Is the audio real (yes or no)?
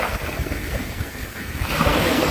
no